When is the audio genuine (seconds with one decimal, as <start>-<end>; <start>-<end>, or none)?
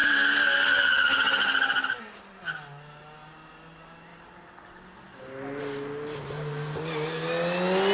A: 0.0-7.9